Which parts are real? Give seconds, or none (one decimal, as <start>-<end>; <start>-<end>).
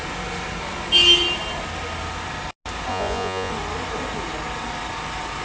0.0-2.9; 3.5-5.4